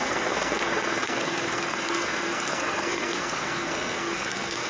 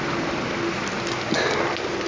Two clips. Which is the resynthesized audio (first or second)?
first